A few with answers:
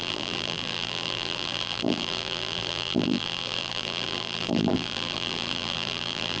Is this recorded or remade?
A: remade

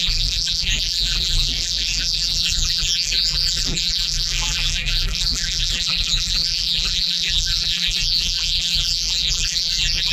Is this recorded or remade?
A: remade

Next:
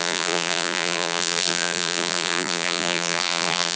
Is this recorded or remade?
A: remade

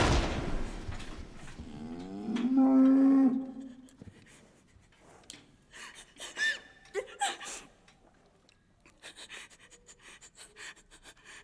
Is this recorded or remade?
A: recorded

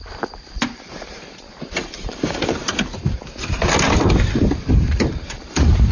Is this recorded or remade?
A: remade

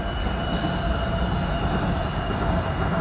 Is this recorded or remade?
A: recorded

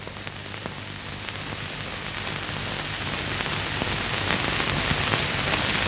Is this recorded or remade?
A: recorded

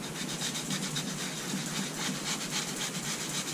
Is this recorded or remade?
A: recorded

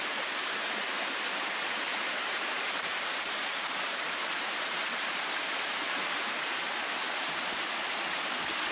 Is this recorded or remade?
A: remade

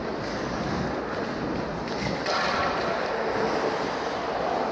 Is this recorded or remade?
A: recorded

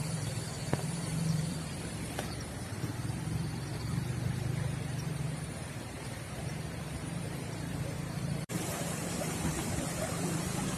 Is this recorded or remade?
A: remade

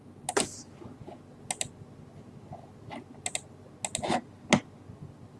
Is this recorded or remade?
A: recorded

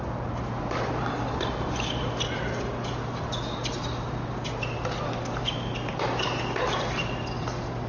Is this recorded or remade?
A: recorded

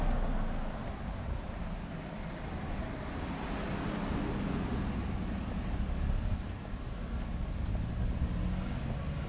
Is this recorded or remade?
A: recorded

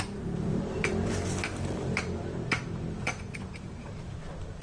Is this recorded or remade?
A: remade